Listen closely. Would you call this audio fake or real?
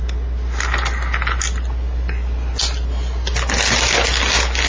real